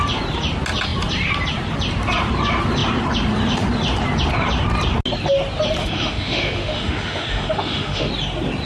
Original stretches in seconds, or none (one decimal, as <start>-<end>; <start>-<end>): 0.0-5.8; 8.1-8.7